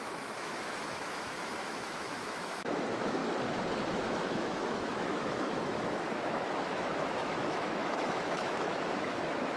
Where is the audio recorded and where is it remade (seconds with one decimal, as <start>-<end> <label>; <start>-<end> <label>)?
0.0-3.2 remade; 3.2-3.9 recorded; 3.9-9.6 remade